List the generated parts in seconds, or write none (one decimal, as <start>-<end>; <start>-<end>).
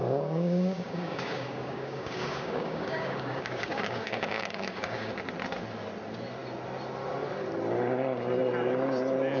0.0-5.1